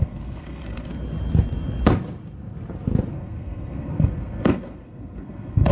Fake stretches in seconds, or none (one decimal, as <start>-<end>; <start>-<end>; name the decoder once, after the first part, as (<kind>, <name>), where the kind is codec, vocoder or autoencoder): 0.0-0.9 (codec, SNAC); 3.1-5.7